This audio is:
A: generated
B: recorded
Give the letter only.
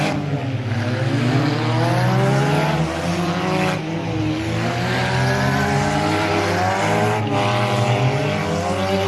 B